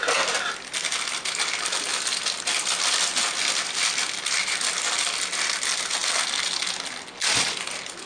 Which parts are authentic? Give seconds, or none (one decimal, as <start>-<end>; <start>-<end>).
0.0-8.1

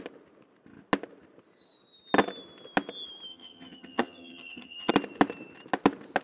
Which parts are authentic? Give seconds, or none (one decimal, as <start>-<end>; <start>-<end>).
0.0-3.3; 4.9-6.2

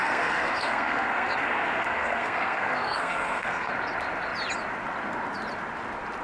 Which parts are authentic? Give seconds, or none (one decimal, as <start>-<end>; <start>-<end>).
3.7-6.2

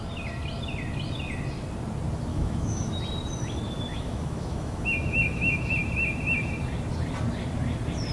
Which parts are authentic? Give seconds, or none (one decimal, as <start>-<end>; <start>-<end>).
0.0-2.3; 3.0-3.9; 5.7-8.1

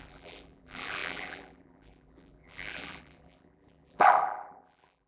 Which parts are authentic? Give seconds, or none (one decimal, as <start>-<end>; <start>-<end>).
none

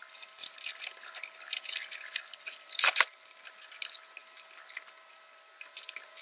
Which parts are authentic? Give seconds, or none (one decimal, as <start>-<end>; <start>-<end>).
3.7-6.2

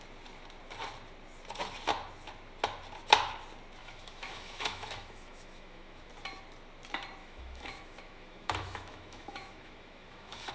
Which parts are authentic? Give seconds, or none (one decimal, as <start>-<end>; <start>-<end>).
0.0-3.8; 6.1-7.2